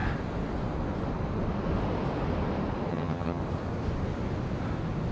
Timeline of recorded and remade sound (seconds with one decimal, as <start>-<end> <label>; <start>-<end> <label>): 0.0-2.9 recorded; 2.9-3.4 remade; 3.4-5.1 recorded